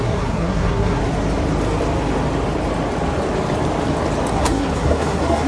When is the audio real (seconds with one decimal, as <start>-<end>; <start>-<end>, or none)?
1.0-4.3